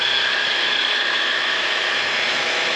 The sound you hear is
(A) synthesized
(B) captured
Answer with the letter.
A